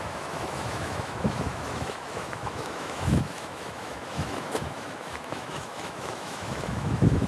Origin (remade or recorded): remade